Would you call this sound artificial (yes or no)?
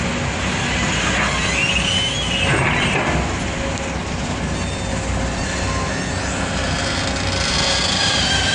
no